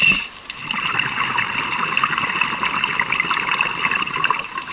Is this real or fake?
real